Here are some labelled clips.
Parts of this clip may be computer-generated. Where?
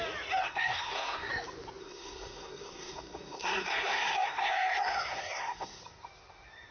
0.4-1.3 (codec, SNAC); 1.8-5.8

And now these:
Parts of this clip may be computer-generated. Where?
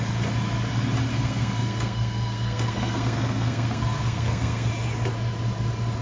1.1-4.7 (codec, SNAC)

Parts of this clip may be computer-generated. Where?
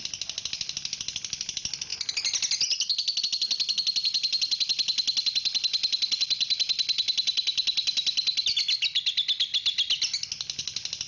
none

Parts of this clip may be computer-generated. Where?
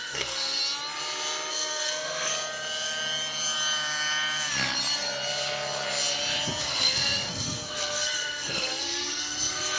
0.0-0.6 (codec, SNAC); 1.5-2.3; 6.6-9.8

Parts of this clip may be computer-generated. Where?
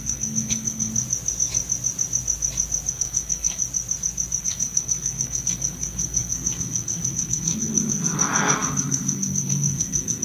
0.0-0.9 (codec, SNAC); 2.9-3.6; 4.4-10.2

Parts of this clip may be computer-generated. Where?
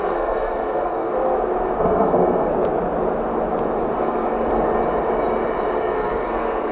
0.0-1.1 (codec, SNAC); 1.8-2.5; 3.9-4.3; 5.8-6.7